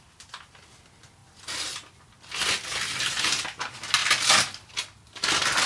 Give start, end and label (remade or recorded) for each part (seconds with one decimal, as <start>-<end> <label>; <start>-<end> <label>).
0.0-5.7 recorded